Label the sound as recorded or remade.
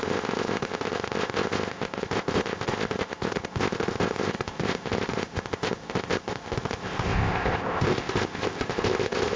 remade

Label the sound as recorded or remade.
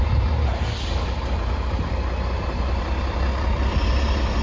recorded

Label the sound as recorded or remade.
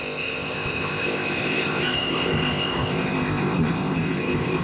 remade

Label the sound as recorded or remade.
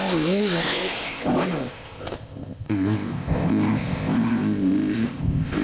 remade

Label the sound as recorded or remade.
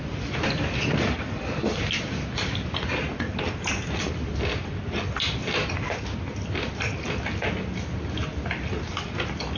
recorded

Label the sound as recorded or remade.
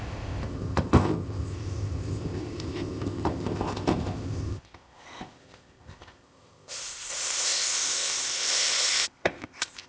remade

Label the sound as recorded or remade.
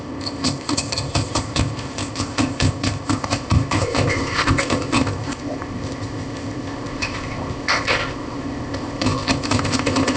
remade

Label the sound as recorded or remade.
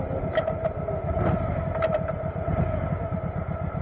recorded